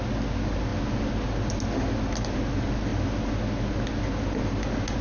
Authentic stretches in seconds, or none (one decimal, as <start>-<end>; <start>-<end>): 0.0-5.0